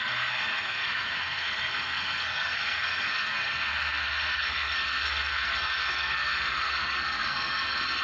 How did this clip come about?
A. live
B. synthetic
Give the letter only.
B